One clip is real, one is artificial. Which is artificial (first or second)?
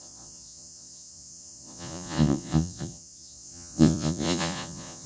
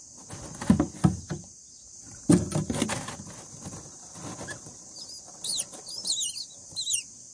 first